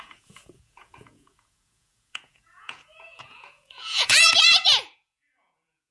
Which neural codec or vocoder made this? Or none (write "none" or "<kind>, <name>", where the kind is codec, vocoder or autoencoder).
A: vocoder, Vocos